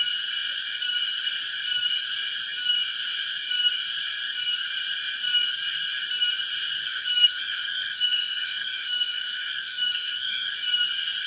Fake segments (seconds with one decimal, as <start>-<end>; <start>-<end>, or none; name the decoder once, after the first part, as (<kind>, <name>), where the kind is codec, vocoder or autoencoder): 6.8-10.5 (codec, SNAC)